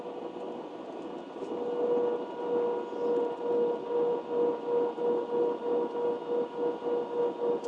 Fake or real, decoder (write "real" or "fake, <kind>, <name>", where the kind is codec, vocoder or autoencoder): real